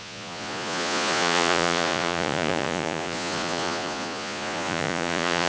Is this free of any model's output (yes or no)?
no